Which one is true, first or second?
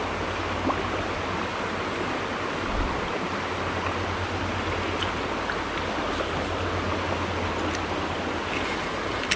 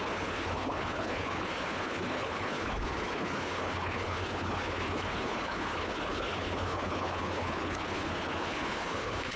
first